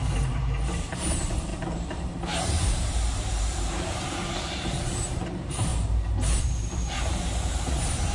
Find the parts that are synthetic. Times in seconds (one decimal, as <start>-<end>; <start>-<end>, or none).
0.0-5.7; 6.4-8.1